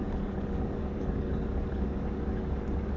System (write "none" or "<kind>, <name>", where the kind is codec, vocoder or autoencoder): codec, DAC